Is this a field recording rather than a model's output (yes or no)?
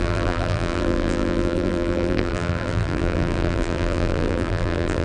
no